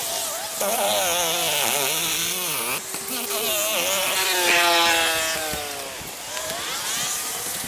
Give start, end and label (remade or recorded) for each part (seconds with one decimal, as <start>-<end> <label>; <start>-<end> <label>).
0.0-7.7 recorded